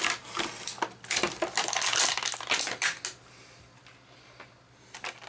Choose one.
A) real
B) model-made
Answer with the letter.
A